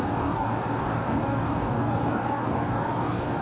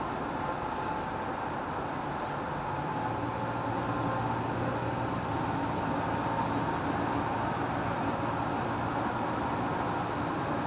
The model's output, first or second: first